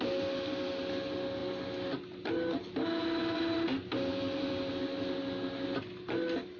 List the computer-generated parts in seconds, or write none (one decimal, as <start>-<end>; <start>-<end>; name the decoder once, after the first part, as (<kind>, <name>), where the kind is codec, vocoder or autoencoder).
none